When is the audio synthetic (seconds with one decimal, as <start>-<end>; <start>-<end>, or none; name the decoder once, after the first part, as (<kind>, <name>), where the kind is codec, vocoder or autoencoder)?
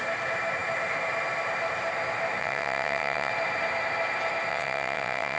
2.4-3.3 (vocoder, WaveNeXt); 4.5-5.4